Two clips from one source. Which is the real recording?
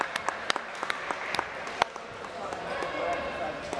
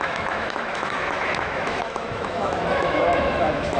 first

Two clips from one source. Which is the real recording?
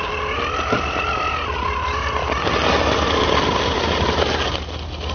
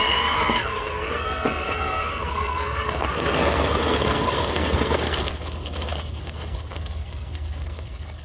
first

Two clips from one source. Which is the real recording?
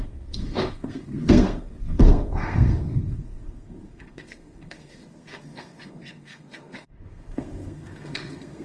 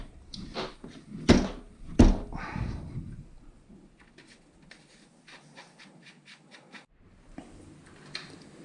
second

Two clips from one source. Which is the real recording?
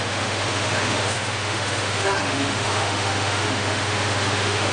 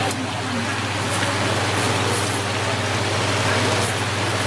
second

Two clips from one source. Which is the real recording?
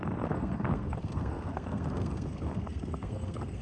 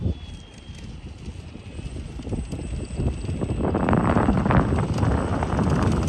second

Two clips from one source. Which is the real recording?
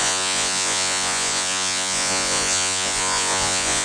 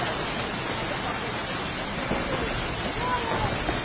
second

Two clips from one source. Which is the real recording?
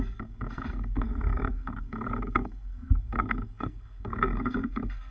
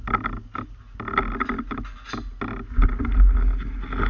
second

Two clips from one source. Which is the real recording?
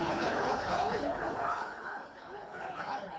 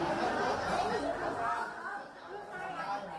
second